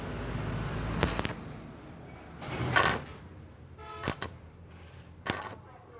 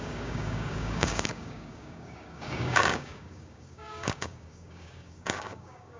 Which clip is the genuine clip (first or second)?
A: first